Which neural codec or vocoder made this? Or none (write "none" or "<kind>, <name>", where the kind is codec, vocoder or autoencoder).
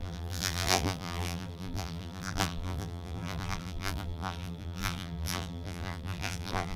vocoder, BigVGAN v2